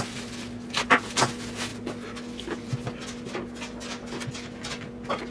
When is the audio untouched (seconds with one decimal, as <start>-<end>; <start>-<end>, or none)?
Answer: 0.0-5.3